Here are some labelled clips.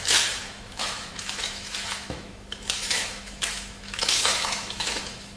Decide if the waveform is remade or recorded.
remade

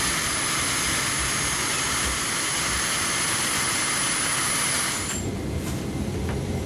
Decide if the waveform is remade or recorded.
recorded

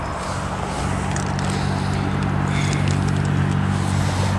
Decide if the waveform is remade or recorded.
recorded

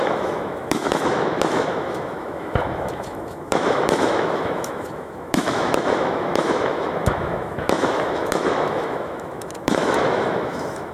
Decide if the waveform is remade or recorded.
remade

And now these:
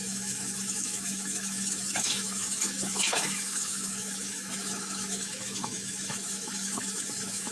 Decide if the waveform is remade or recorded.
remade